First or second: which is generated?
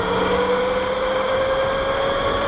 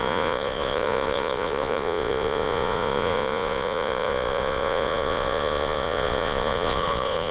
second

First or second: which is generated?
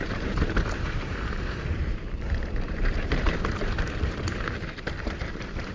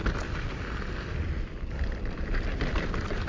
first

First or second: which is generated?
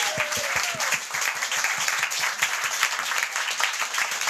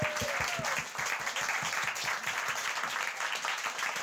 first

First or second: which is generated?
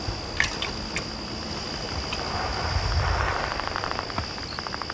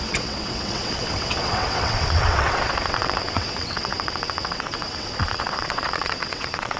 second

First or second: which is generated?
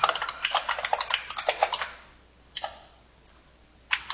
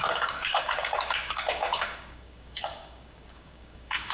second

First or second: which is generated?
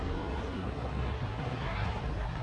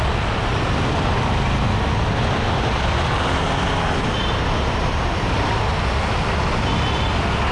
first